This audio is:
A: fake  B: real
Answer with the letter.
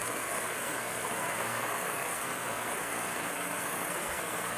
A